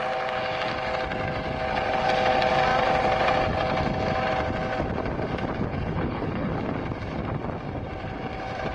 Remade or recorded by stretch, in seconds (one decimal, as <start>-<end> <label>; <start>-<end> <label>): 0.0-5.7 recorded; 5.7-6.5 remade; 6.5-8.7 recorded